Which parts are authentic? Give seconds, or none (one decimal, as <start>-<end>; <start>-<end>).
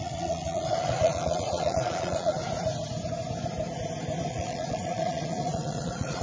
2.4-4.3